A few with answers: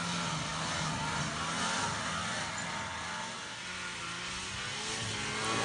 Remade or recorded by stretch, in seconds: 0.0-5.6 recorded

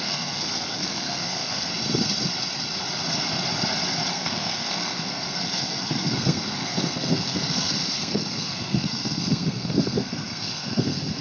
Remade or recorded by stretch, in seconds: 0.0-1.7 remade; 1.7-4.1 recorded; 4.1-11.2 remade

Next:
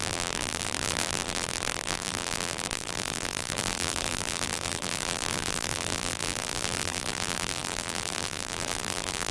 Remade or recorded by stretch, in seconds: 0.0-9.3 remade